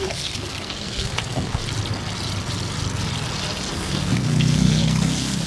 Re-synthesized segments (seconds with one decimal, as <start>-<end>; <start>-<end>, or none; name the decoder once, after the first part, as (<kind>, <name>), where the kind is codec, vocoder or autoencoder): 0.0-1.6 (codec, SNAC); 3.7-5.5